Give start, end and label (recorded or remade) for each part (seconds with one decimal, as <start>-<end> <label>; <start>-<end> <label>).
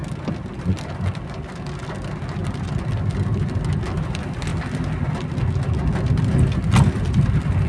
0.0-2.4 recorded; 2.4-3.0 remade; 3.0-7.7 recorded